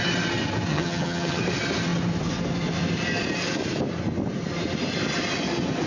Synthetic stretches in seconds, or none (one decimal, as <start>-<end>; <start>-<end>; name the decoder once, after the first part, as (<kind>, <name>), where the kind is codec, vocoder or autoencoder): 0.7-1.4 (vocoder, HiFi-GAN)